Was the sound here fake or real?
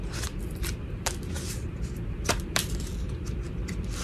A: fake